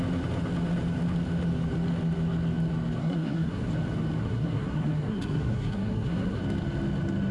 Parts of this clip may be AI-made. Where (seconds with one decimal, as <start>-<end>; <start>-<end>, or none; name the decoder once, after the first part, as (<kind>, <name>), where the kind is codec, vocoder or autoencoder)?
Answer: 3.0-3.7 (codec, SNAC); 4.2-6.4